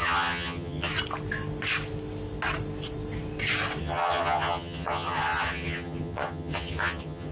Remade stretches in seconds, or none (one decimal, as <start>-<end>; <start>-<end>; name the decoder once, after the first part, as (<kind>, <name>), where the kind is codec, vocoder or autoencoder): 0.0-0.9 (vocoder, HiFi-GAN); 3.8-7.3